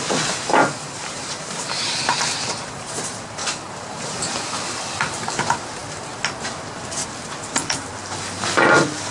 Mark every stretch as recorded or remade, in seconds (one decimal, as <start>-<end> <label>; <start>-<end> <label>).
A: 0.0-0.6 recorded; 0.6-2.9 remade; 2.9-3.4 recorded; 3.4-4.9 remade; 4.9-9.1 recorded